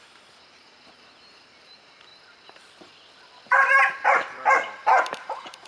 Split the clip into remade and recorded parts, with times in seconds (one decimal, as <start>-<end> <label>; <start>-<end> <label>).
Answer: 0.0-2.1 remade; 2.1-4.0 recorded; 4.0-4.4 remade; 4.4-5.0 recorded; 5.0-5.7 remade